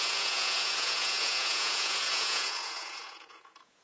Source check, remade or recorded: remade